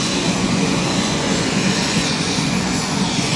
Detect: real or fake fake